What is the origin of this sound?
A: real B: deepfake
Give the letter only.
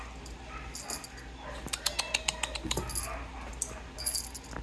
A